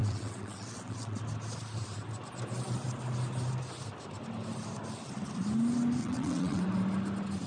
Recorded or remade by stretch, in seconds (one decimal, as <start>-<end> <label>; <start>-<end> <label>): 0.0-1.2 remade; 1.2-6.0 recorded; 6.0-6.6 remade; 6.6-7.5 recorded